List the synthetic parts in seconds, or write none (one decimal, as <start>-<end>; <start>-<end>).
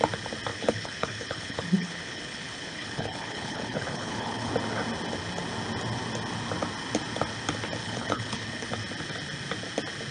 0.5-4.5; 7.8-8.7